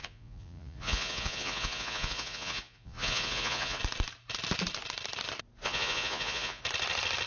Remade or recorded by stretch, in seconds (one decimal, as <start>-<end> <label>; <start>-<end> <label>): 0.0-3.8 remade; 3.8-5.6 recorded; 5.6-6.6 remade; 6.6-7.3 recorded